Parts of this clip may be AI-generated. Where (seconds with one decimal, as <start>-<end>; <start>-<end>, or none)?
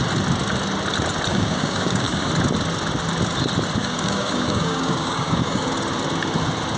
1.3-2.3; 3.8-5.7